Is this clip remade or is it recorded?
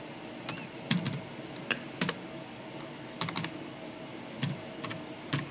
recorded